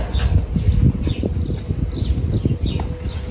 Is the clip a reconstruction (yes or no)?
no